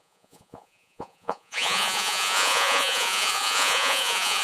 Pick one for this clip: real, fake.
fake